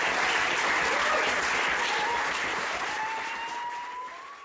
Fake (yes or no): no